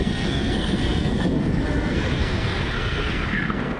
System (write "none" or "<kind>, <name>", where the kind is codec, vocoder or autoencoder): codec, SNAC